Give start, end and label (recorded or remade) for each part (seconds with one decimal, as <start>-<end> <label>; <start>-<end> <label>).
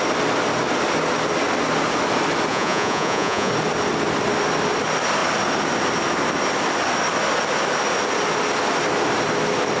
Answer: 0.0-2.5 recorded; 2.5-3.5 remade; 3.5-9.8 recorded